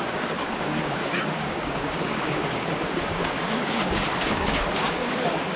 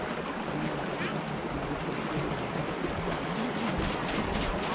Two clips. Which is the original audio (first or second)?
second